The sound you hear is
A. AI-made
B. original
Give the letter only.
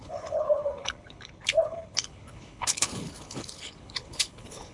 A